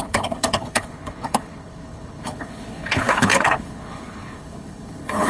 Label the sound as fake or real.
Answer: fake